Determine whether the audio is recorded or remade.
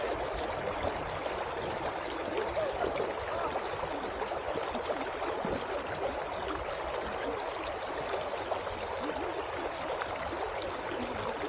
recorded